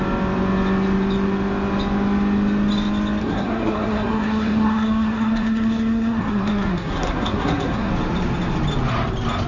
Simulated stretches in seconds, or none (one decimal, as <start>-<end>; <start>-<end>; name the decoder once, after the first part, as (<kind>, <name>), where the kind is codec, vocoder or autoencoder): 3.2-7.9 (codec, SNAC)

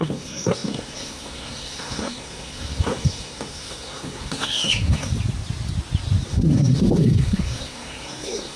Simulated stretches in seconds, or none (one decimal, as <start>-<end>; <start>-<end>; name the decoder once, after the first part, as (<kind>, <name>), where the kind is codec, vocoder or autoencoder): 0.0-5.1 (codec, SNAC); 6.3-8.6